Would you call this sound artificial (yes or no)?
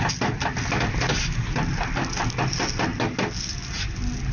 no